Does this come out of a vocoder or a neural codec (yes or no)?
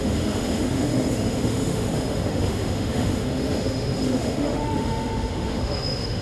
yes